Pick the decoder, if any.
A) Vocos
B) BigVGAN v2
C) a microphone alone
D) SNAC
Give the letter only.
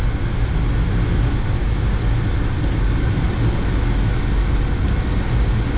C